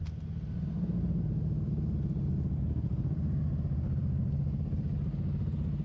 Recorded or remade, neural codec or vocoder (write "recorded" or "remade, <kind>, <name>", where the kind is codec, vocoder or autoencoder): recorded